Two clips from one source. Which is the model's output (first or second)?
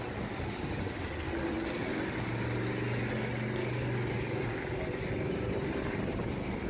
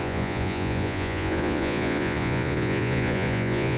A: second